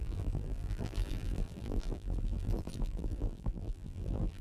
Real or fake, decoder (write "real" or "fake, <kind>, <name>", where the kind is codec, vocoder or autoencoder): fake, vocoder, BigVGAN v2